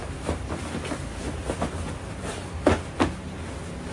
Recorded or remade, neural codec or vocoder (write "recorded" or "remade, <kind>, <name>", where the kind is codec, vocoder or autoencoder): recorded